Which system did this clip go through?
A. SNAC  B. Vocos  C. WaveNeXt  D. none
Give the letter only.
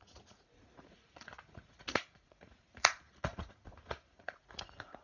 B